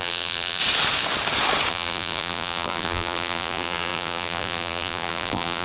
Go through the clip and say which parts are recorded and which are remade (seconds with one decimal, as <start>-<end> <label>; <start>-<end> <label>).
0.0-0.6 remade; 0.6-1.7 recorded; 1.7-5.6 remade